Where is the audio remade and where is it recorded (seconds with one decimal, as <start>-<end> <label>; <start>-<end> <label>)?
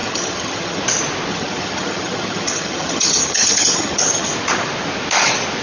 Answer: 0.0-0.8 remade; 0.8-1.3 recorded; 1.3-4.3 remade; 4.3-5.6 recorded